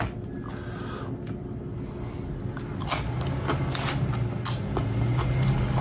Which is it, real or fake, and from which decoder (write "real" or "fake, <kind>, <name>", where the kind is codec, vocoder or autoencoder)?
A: real